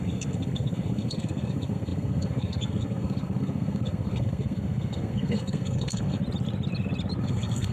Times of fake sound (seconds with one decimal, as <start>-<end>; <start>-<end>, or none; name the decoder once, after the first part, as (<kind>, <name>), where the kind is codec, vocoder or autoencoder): 0.0-6.2 (codec, SNAC); 7.2-7.7